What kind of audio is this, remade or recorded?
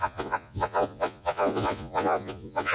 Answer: remade